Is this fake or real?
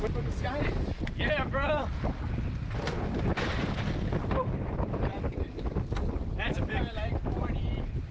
real